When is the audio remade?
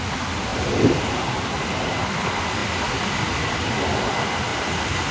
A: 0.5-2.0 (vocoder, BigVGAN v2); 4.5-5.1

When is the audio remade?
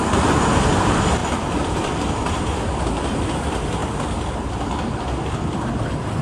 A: 1.2-3.2 (vocoder, BigVGAN v2)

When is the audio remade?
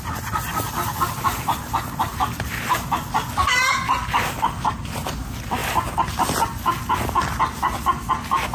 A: none